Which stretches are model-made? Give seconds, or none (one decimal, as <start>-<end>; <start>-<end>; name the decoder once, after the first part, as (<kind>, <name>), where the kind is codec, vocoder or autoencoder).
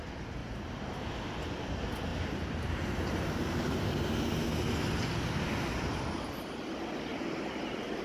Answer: 0.4-1.2 (vocoder, BigVGAN v2); 2.1-4.1; 7.1-8.0